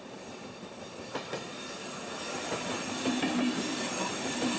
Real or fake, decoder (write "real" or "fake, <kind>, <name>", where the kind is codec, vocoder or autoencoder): fake, vocoder, BigVGAN v2